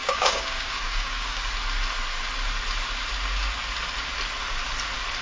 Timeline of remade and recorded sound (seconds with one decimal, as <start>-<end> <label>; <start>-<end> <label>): 0.0-1.5 remade; 1.5-5.2 recorded